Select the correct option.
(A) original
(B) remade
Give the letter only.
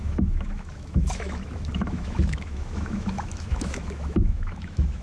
B